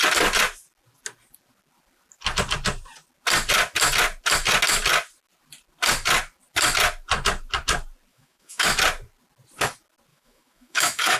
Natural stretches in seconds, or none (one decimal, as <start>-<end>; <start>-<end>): 0.0-8.1; 8.8-10.1